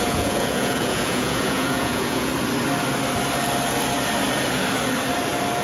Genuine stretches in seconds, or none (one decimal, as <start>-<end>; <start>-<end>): 2.3-5.6